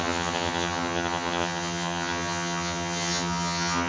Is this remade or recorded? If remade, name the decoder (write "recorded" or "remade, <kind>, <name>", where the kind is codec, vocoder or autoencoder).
remade, vocoder, HiFi-GAN